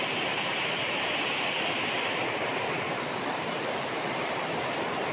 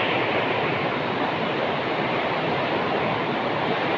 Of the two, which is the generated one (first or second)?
first